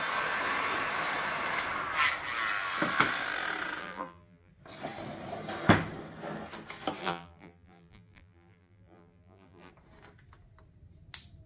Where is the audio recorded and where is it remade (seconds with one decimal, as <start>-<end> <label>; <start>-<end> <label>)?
0.0-3.8 recorded; 3.8-4.5 remade; 4.5-7.0 recorded; 7.0-9.7 remade; 9.7-11.5 recorded